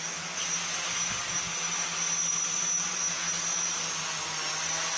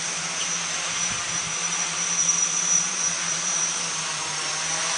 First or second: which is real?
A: first